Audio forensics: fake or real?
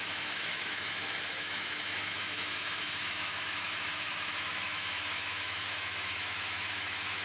fake